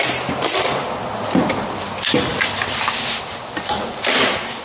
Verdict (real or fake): real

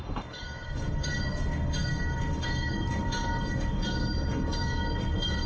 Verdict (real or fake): fake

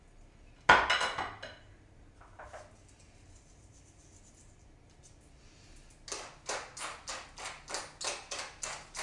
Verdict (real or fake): real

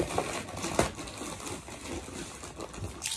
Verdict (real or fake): real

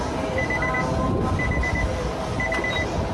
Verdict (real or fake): real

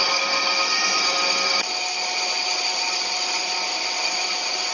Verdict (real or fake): real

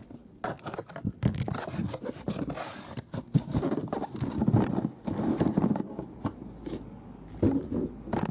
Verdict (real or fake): real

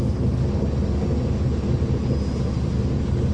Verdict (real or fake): real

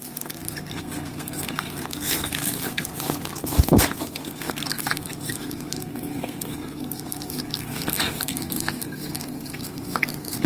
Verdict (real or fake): fake